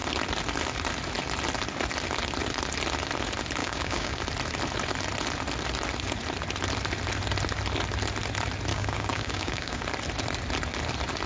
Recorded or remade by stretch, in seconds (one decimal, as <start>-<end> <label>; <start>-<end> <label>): 0.0-3.6 recorded; 3.6-4.2 remade; 4.2-8.7 recorded; 8.7-9.8 remade; 9.8-11.3 recorded